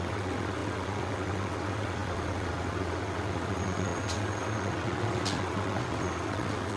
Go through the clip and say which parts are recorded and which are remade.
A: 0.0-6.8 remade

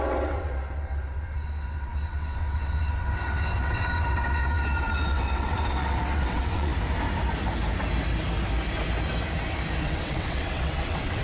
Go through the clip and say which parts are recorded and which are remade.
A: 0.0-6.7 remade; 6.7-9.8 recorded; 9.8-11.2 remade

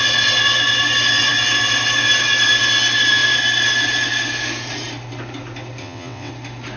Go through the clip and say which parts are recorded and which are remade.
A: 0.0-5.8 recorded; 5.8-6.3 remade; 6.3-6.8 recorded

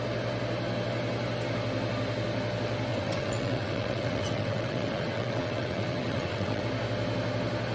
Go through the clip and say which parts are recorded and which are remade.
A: 0.0-2.9 recorded; 2.9-6.6 remade; 6.6-7.7 recorded